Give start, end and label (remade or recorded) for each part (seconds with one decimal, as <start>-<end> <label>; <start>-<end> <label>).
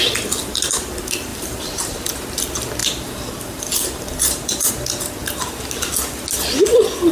0.0-1.3 recorded; 1.3-2.1 remade; 2.1-2.8 recorded; 2.8-4.7 remade; 4.7-7.1 recorded